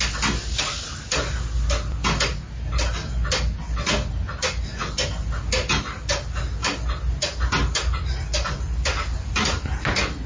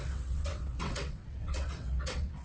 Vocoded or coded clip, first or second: second